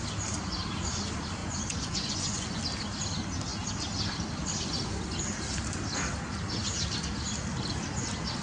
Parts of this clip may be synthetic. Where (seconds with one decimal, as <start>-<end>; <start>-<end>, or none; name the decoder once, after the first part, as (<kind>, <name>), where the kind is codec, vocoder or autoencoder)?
1.4-2.6 (vocoder, Vocos)